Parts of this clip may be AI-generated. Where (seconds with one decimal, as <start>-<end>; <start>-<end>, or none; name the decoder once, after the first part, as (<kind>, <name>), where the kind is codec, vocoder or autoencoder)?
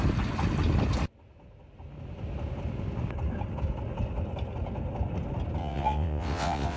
5.6-6.8 (vocoder, WaveNeXt)